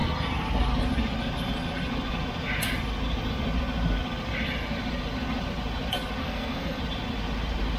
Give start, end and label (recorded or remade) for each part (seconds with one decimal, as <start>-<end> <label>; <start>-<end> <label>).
0.0-6.2 recorded; 6.2-6.8 remade; 6.8-7.8 recorded